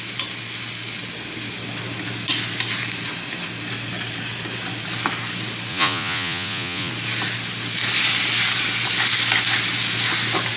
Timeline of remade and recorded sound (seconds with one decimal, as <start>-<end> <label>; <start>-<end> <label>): 0.0-5.7 recorded; 5.7-6.9 remade; 6.9-10.6 recorded